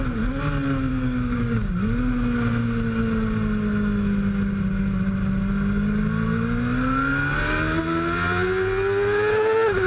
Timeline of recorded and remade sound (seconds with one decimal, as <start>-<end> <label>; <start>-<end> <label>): 0.0-0.9 recorded; 0.9-1.7 remade; 1.7-9.9 recorded